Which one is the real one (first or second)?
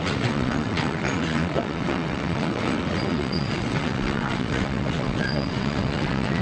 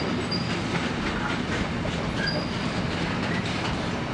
second